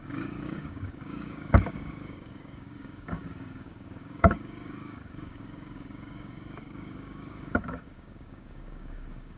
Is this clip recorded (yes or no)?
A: no